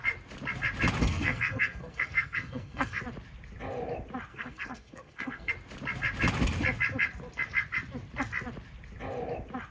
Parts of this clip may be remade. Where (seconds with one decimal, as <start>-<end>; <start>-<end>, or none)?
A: 1.0-3.0; 4.3-5.5